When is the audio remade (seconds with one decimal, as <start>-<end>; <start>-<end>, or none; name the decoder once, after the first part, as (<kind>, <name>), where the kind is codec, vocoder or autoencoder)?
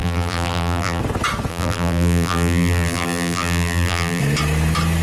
0.0-1.0 (vocoder, BigVGAN v2); 1.5-4.2